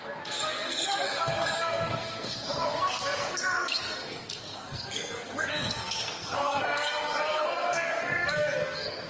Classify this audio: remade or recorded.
remade